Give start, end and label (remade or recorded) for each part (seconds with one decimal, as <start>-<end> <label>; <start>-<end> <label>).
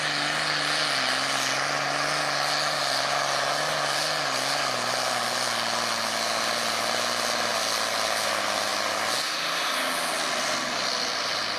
0.0-11.6 recorded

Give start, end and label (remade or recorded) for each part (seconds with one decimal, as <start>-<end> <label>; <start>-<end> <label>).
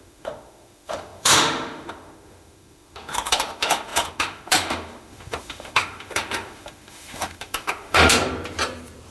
0.0-8.1 remade; 8.1-9.1 recorded